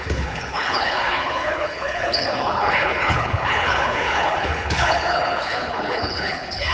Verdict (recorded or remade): remade